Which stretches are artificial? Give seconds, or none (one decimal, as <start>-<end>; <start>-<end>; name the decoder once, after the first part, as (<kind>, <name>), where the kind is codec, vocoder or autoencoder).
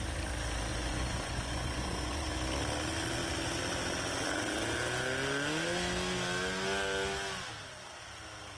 0.7-2.3 (vocoder, Vocos)